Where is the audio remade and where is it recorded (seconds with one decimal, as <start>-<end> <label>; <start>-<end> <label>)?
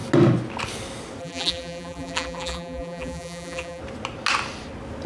0.0-1.2 recorded; 1.2-3.8 remade; 3.8-5.1 recorded